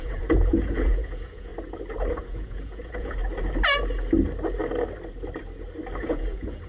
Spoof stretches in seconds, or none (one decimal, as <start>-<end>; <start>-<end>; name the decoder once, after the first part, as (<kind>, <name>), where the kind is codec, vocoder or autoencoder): 0.0-1.5 (vocoder, Vocos); 2.1-3.2; 6.0-6.7

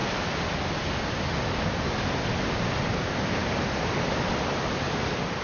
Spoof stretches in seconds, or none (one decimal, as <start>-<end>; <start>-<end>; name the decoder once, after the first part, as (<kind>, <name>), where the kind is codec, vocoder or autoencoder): none

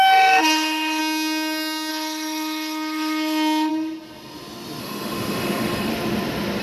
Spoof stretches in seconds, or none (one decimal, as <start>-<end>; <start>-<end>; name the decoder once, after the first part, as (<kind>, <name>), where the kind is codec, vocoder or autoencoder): 0.0-1.0 (autoencoder, DAC-VAE); 1.9-3.7; 4.8-5.9